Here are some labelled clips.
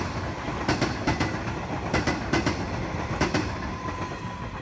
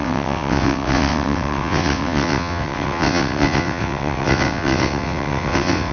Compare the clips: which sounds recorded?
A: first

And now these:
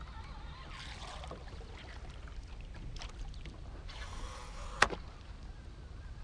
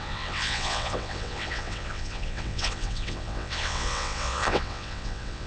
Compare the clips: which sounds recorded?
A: first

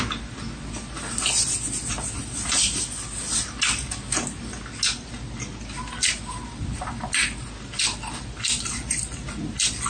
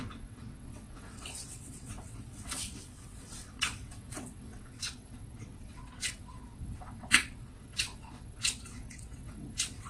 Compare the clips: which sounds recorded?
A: first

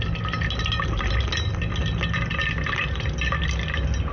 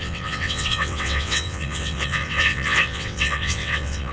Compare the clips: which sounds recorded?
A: first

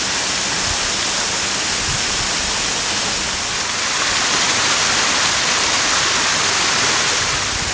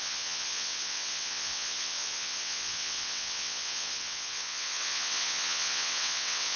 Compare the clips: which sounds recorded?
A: first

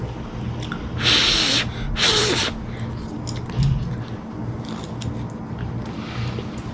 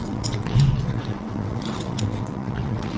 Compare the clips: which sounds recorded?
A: first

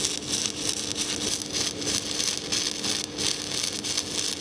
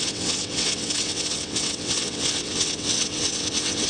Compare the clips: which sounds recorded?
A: first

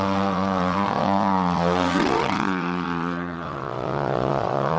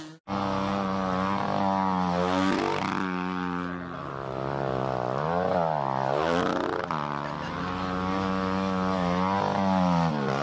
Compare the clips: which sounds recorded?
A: second